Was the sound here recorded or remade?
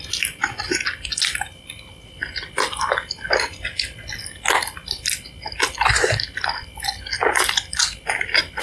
recorded